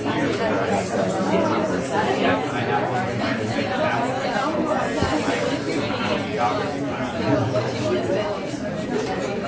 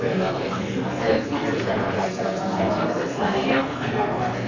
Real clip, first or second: first